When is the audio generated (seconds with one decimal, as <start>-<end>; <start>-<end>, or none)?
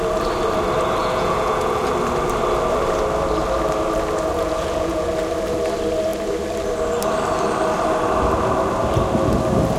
1.0-1.9; 4.3-5.1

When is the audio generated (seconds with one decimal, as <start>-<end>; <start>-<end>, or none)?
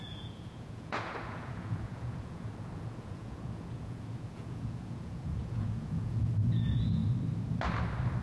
0.0-7.0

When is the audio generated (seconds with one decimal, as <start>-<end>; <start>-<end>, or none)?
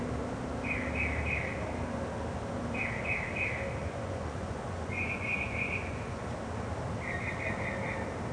3.8-6.2